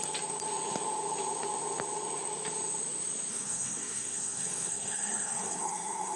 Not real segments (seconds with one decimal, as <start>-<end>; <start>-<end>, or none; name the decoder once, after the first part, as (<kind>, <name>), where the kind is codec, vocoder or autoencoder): 3.3-6.2 (codec, SNAC)